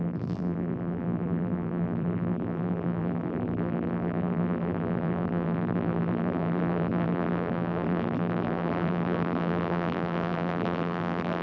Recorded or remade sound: remade